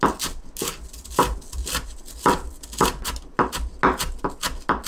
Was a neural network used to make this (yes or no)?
no